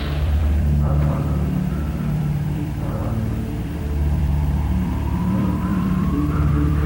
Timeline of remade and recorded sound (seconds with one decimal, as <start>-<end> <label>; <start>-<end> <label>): 0.0-6.9 remade